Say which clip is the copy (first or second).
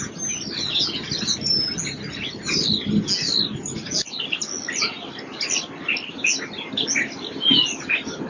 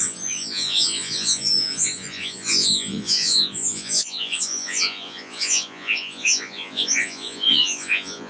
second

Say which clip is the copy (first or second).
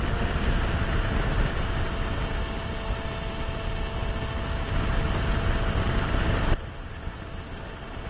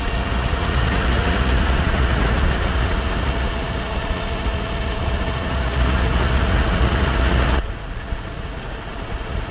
second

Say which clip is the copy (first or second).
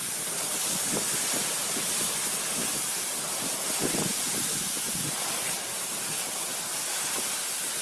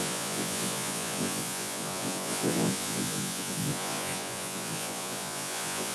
second